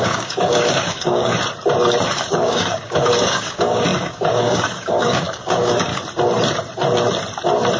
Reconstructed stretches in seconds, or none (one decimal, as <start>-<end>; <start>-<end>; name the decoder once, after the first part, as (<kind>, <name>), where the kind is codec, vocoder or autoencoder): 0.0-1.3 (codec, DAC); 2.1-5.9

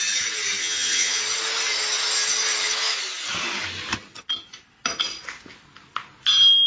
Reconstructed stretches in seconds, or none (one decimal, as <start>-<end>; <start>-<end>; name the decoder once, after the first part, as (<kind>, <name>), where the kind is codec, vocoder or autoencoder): 0.6-1.2 (vocoder, HiFi-GAN)

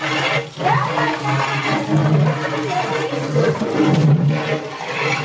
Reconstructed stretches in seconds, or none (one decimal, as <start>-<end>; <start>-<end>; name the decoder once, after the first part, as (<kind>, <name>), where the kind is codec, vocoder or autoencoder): none

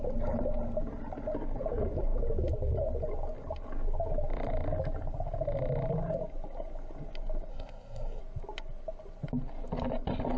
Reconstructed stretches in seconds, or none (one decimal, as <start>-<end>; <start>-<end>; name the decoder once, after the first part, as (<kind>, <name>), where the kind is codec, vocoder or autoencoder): 7.5-8.2 (codec, SNAC)